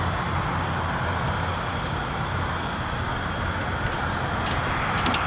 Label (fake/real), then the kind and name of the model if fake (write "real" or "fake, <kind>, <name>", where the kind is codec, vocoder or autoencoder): real